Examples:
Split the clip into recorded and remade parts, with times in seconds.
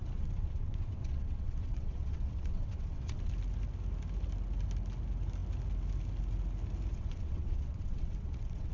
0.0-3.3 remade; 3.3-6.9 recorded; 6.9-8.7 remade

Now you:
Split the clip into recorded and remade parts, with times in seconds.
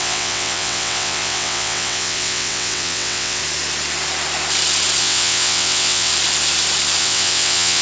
0.0-3.4 remade; 3.4-5.0 recorded; 5.0-6.1 remade; 6.1-7.0 recorded; 7.0-7.8 remade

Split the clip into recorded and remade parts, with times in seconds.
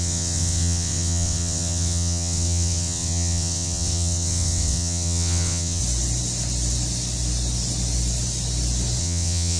0.0-5.8 remade; 5.8-9.0 recorded; 9.0-9.6 remade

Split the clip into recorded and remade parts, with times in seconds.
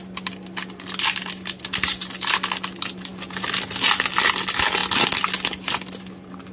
0.0-6.5 recorded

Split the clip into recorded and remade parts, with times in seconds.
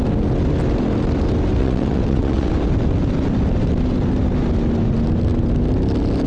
0.0-1.6 recorded; 1.6-2.5 remade; 2.5-6.3 recorded